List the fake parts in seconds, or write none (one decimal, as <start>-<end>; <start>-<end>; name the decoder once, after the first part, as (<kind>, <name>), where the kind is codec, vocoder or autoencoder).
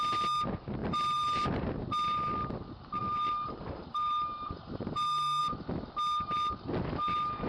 0.8-1.8 (vocoder, BigVGAN v2); 3.0-5.4